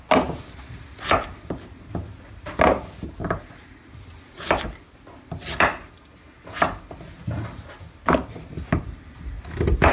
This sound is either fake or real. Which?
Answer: real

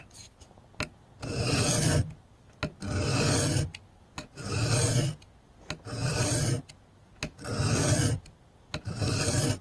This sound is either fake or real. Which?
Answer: real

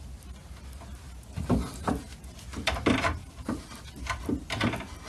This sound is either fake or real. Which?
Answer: real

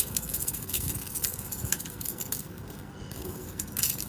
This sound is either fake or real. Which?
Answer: fake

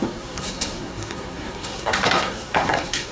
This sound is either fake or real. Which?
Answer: fake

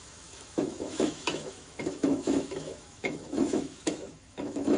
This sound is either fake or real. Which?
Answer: fake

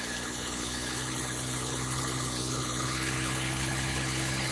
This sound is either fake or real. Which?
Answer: fake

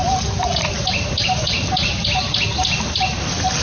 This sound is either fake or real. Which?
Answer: real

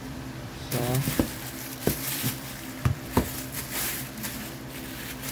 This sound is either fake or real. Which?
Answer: fake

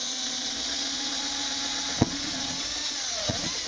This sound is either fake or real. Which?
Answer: fake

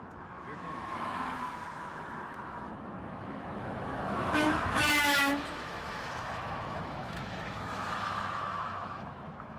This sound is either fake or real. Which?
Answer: fake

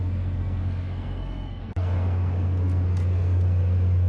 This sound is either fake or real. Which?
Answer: fake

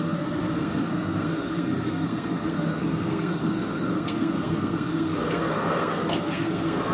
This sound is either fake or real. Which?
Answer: fake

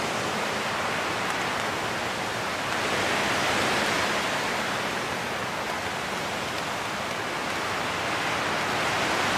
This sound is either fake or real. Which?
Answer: real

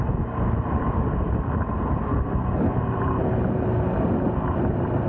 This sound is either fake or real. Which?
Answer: real